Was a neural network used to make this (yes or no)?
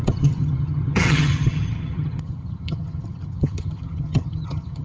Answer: yes